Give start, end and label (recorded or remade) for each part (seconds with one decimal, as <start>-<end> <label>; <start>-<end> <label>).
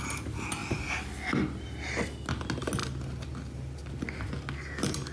0.0-5.1 recorded